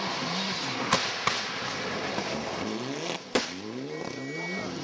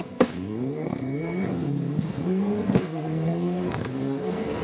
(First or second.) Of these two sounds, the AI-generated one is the second